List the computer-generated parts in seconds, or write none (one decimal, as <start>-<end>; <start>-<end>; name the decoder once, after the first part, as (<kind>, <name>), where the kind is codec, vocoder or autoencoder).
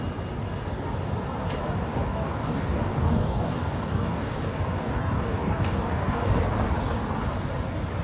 1.9-6.3 (codec, DAC)